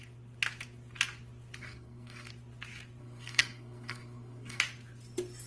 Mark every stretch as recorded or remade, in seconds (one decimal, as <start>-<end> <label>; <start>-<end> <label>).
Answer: 0.0-1.6 recorded; 1.6-2.3 remade; 2.3-3.0 recorded; 3.0-4.6 remade; 4.6-5.5 recorded